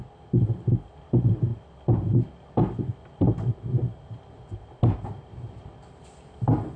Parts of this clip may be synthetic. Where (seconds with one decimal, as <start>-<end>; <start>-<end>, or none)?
none